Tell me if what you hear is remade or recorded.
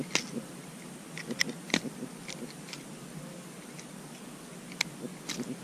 recorded